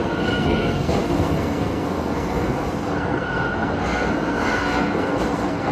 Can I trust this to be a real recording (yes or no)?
no